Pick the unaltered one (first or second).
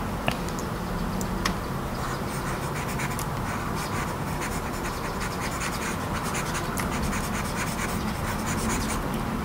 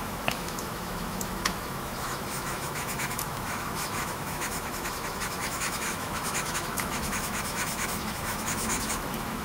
first